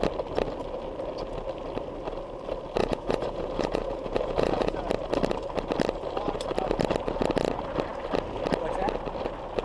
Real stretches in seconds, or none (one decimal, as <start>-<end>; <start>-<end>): 0.0-2.8; 4.9-9.6